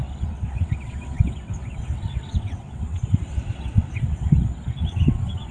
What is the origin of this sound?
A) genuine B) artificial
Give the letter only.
B